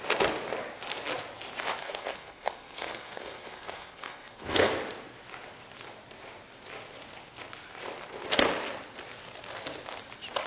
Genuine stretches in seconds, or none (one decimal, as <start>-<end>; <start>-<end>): 0.0-1.8; 4.7-10.5